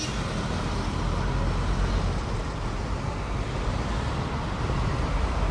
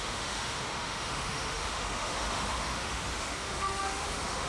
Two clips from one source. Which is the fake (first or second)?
second